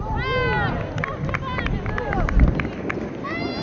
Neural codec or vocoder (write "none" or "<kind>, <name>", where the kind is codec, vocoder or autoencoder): none